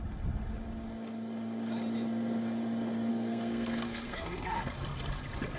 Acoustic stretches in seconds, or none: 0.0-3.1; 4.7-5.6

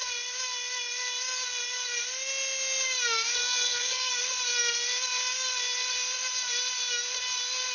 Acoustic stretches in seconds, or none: 0.0-3.4; 4.1-7.7